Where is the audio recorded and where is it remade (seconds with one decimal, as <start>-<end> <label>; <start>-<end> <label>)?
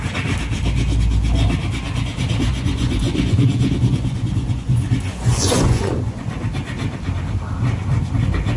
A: 0.0-2.5 recorded; 2.5-6.3 remade; 6.3-8.6 recorded